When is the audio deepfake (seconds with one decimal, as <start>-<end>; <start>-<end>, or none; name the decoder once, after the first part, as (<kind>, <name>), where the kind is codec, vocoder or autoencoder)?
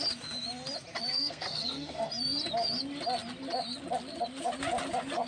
1.1-2.1 (codec, SNAC)